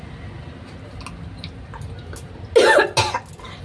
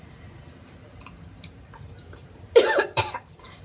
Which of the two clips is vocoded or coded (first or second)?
second